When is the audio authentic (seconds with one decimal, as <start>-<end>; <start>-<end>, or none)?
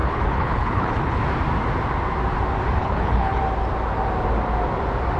1.2-2.8; 3.4-5.2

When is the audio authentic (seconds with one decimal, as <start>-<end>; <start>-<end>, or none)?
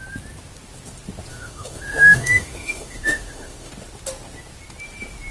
0.0-1.3; 3.7-5.3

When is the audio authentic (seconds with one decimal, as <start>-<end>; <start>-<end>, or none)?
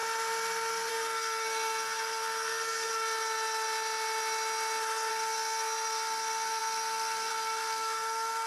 0.0-0.9; 2.9-5.1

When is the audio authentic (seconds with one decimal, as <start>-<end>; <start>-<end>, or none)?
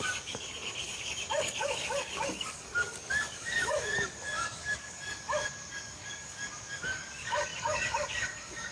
none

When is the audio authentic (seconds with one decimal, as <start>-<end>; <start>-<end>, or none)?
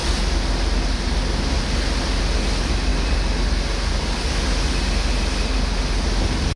0.0-6.6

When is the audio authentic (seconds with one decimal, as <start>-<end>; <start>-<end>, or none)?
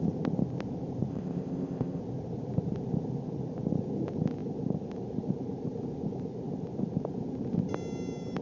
0.0-1.1; 2.0-8.4